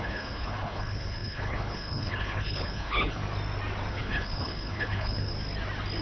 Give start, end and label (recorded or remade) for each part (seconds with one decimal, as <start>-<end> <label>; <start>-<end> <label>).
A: 0.0-3.2 remade; 3.2-3.9 recorded; 3.9-5.3 remade; 5.3-6.0 recorded